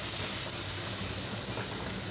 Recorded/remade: recorded